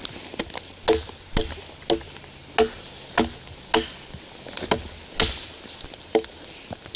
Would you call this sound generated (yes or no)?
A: no